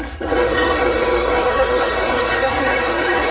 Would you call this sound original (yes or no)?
no